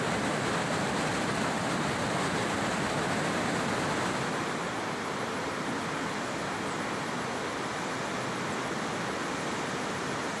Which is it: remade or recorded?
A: recorded